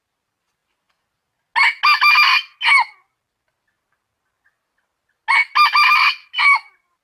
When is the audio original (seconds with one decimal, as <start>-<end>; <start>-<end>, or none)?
0.0-7.0